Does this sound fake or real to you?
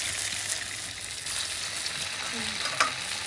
real